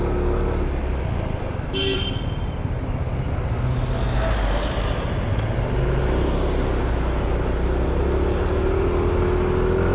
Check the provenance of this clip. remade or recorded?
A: recorded